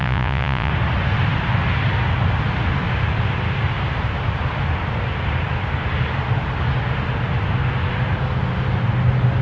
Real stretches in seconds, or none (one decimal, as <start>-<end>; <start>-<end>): 0.7-9.4